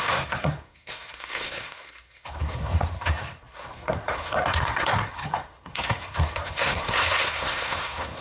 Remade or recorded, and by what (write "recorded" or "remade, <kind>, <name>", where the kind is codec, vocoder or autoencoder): remade, codec, SNAC